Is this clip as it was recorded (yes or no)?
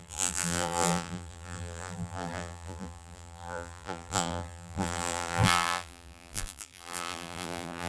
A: no